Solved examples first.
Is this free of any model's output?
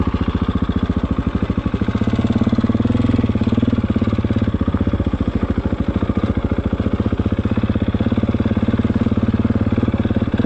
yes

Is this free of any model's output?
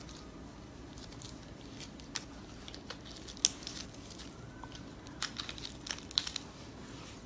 yes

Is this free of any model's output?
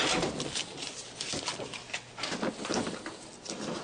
yes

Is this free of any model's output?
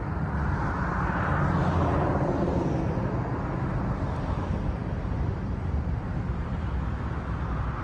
yes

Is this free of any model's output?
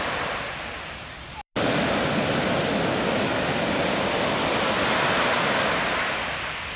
yes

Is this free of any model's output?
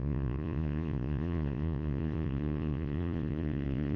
no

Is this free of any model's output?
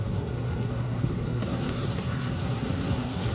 no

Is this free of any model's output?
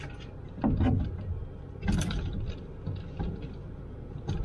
yes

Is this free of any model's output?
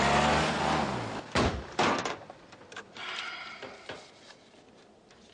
yes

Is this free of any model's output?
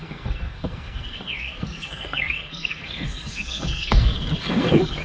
no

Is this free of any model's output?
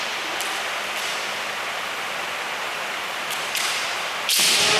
yes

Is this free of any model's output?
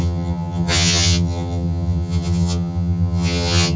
no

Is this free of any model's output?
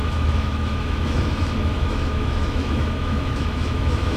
no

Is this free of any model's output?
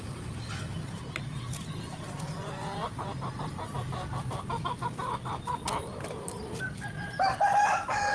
yes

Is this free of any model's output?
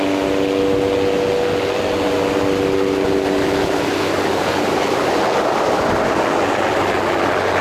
yes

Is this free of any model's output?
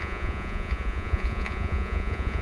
no